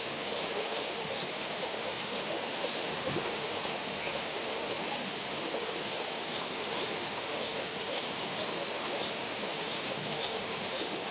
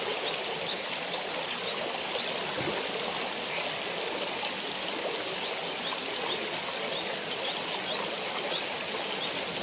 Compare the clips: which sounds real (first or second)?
second